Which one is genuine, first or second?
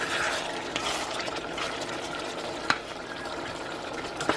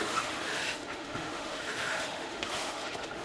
first